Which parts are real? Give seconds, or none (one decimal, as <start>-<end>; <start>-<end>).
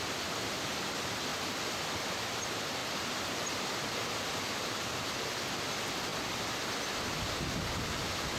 0.0-1.3; 2.1-8.4